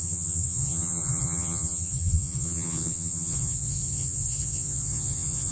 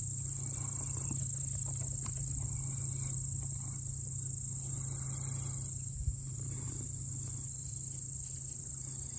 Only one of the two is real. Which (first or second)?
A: second